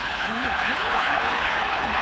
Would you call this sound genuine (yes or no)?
no